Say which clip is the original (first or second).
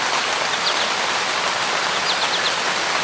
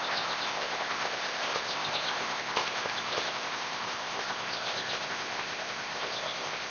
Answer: first